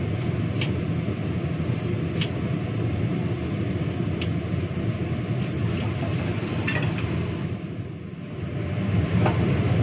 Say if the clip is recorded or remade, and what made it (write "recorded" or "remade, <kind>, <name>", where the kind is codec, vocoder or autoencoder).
recorded